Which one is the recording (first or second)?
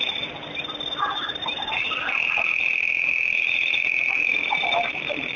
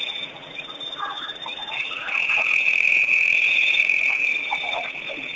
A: first